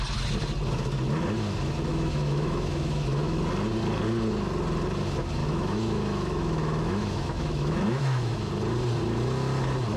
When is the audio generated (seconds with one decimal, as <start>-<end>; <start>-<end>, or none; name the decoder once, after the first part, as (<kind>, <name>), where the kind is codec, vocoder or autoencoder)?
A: 1.9-3.4 (autoencoder, DAC-VAE); 5.4-8.5